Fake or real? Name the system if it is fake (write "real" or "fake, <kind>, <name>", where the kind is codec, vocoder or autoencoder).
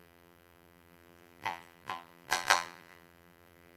fake, vocoder, BigVGAN v2